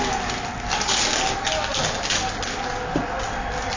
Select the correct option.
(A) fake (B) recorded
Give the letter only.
B